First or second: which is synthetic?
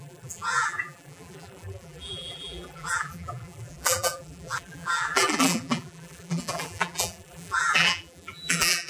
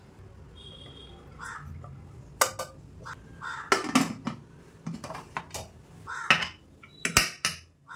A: first